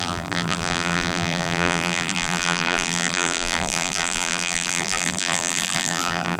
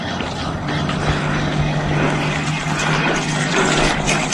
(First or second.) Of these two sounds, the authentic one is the second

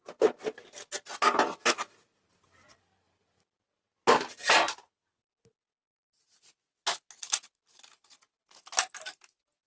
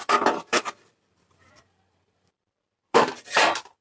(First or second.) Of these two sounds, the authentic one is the first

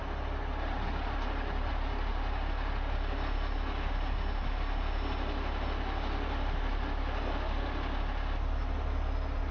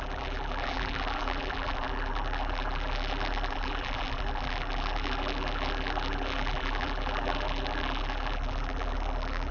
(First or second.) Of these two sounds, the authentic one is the first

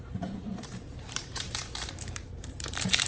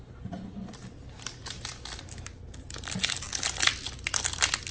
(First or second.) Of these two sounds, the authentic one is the second